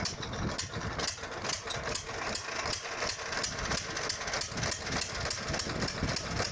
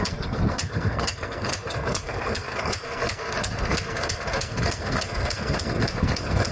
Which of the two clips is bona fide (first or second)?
first